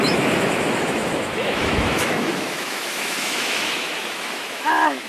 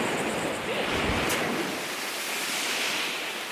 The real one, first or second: second